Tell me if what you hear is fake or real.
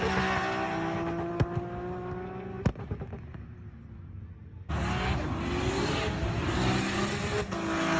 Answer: real